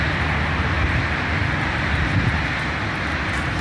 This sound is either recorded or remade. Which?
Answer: recorded